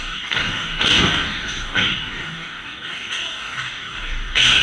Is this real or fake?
fake